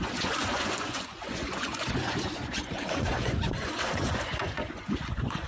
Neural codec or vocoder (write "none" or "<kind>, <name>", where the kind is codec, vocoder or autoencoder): vocoder, Vocos